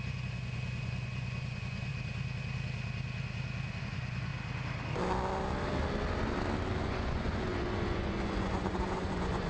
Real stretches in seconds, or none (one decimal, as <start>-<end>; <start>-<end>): 1.9-3.8; 4.3-6.8